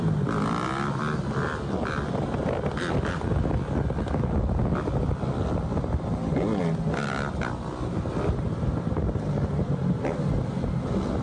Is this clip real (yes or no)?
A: yes